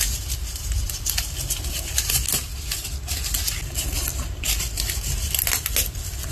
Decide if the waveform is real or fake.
real